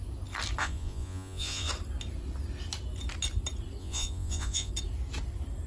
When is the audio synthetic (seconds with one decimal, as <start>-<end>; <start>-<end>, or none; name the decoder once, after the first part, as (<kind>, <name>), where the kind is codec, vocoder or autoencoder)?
0.6-1.7 (vocoder, Vocos); 3.8-4.7